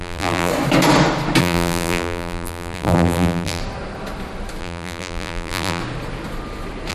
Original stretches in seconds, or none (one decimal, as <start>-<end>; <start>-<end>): 0.5-1.4; 3.6-4.6; 5.8-6.9